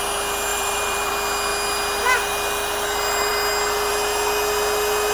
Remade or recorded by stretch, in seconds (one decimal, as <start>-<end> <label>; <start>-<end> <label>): 0.0-0.5 recorded; 0.5-1.1 remade; 1.1-5.1 recorded